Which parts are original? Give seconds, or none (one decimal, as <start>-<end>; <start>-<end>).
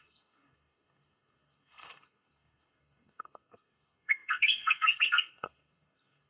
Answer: none